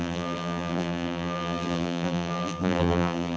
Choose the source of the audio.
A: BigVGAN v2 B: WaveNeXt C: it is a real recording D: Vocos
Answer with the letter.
A